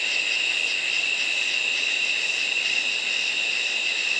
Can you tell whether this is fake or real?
real